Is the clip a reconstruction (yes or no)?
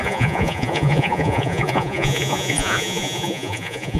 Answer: yes